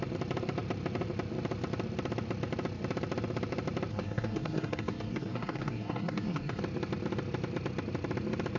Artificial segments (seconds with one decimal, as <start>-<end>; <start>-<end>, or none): 3.9-6.6